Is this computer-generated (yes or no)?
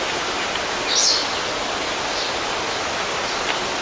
no